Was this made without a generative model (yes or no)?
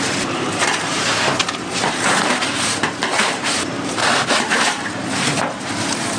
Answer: no